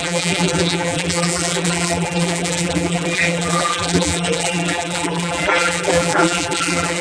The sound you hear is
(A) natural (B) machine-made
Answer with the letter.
B